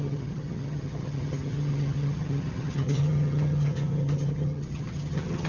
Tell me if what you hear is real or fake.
fake